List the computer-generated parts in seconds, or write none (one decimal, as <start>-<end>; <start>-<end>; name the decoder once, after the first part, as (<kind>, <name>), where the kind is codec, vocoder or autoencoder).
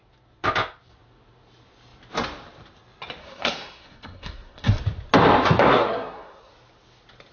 3.2-4.8 (codec, SNAC); 5.7-6.5